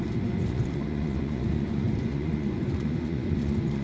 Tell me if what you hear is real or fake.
fake